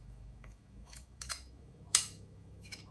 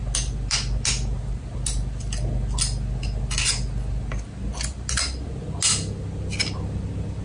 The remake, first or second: first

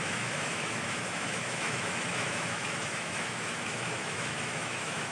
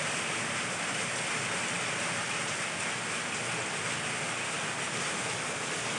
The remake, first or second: first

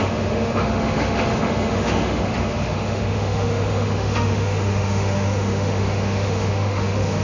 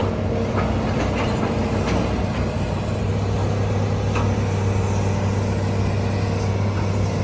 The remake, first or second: first